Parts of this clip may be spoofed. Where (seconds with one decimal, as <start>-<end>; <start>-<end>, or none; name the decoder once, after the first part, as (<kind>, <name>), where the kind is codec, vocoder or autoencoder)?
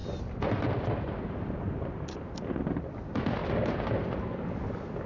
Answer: none